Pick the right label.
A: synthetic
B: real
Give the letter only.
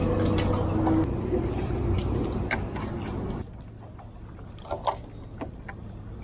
B